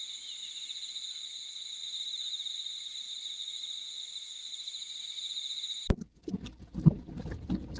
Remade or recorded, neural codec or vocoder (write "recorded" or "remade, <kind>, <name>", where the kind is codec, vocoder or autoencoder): recorded